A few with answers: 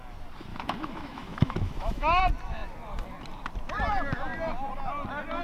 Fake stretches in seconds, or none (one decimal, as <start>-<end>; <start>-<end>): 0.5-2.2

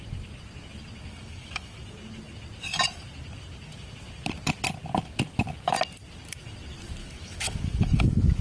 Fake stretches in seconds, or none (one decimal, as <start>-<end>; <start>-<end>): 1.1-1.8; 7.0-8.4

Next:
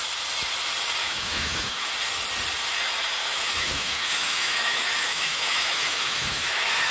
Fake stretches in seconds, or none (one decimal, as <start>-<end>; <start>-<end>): 1.0-1.9; 3.2-6.9

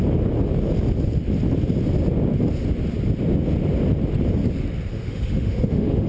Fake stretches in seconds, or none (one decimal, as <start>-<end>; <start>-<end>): 4.9-6.1